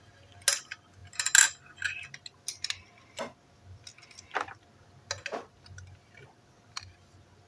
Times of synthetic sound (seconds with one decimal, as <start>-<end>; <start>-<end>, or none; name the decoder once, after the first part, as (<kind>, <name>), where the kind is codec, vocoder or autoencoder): none